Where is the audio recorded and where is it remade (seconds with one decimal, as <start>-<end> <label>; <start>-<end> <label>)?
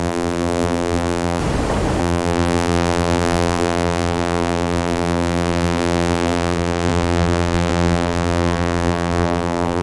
0.0-1.4 remade; 1.4-2.0 recorded; 2.0-9.8 remade